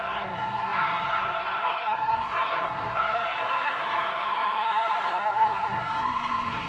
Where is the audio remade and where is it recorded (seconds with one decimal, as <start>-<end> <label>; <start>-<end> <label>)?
0.0-6.7 remade